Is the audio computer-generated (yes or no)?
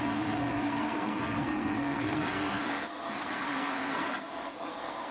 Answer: yes